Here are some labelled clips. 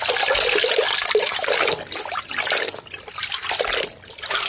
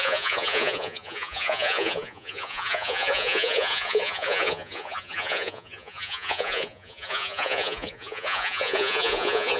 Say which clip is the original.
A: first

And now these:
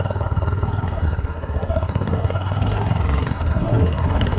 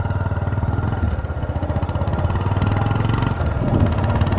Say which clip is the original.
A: second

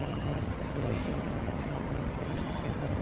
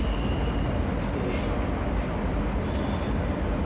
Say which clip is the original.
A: second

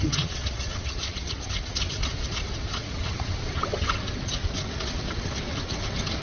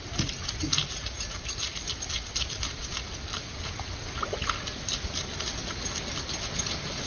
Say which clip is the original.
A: second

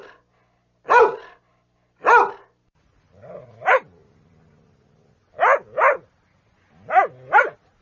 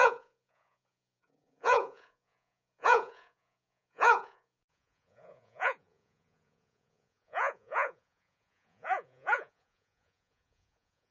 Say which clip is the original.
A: first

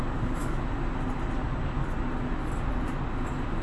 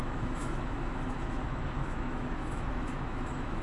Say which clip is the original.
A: first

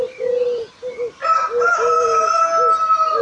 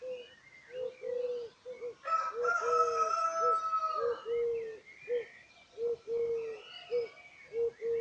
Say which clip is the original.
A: second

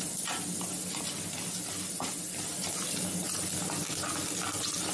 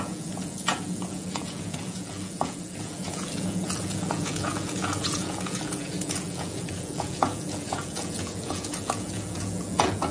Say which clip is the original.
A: first